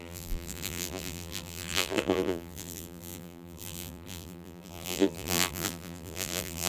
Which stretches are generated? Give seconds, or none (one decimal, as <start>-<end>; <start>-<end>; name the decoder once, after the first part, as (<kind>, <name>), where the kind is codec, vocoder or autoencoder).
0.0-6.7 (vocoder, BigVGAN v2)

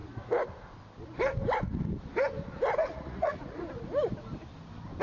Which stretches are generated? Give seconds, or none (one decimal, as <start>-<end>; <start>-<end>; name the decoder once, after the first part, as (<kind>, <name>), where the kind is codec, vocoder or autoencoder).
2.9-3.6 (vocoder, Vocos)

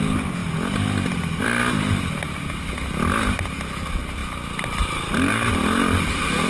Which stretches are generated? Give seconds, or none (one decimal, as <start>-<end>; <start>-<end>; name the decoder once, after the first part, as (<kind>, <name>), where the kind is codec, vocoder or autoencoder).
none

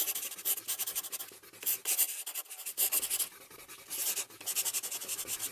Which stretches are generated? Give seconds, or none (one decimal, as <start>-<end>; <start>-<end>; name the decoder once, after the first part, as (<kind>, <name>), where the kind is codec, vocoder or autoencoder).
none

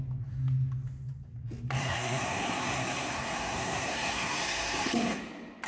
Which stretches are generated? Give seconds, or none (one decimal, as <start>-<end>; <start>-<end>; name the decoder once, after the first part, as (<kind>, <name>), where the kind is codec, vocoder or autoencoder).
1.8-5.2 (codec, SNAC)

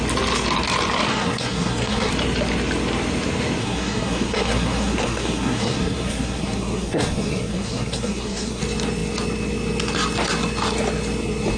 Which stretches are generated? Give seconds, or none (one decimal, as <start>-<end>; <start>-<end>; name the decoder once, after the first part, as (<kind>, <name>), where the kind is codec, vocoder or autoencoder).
1.1-2.1 (codec, SNAC); 3.6-8.6

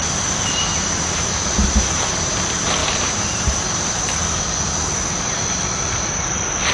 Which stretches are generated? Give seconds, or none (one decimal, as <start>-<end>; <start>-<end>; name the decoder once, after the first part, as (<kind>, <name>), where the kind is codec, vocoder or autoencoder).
0.7-2.3 (vocoder, BigVGAN v2); 2.8-4.2